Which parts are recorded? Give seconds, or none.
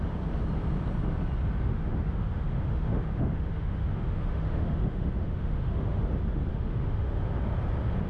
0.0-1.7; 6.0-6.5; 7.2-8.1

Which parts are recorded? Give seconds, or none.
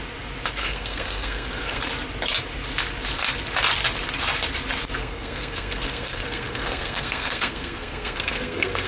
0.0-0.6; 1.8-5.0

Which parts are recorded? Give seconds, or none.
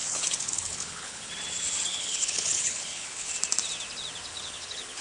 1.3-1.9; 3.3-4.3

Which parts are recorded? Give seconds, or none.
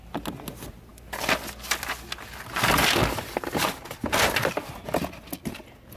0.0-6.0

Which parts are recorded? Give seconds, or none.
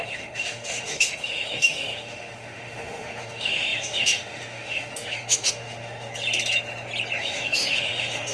6.1-7.2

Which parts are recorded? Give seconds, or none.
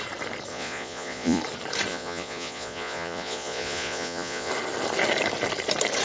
0.0-0.5; 1.4-1.9; 4.5-6.0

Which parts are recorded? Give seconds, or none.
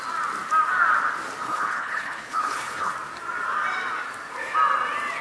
0.0-1.4; 2.9-5.2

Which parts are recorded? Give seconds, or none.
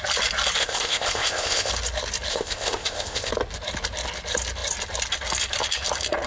0.0-0.6; 1.7-2.3; 3.3-6.3